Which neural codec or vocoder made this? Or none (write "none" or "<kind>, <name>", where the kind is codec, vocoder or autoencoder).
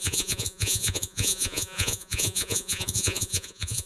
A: vocoder, Vocos